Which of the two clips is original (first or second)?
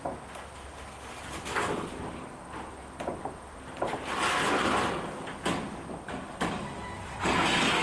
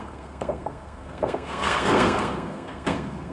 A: first